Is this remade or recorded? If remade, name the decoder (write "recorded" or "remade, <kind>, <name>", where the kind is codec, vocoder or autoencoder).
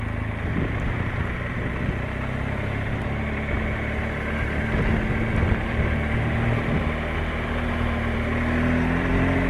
recorded